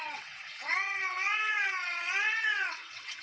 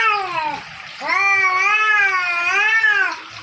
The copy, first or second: first